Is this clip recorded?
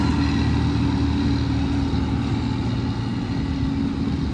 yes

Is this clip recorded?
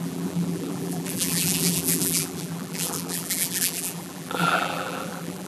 no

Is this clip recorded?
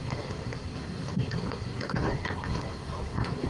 no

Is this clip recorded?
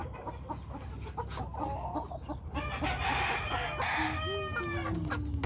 yes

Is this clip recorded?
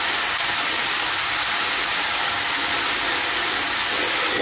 yes